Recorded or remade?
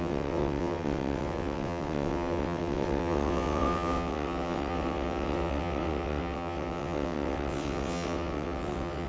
remade